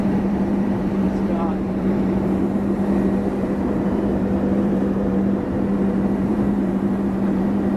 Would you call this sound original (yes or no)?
no